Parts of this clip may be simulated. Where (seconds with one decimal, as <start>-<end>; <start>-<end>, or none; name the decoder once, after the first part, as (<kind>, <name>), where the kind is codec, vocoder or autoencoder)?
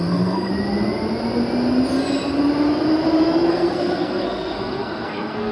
0.0-0.5 (codec, SNAC); 3.5-5.5